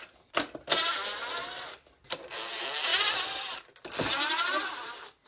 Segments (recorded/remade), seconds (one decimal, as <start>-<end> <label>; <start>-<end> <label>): 0.0-5.3 recorded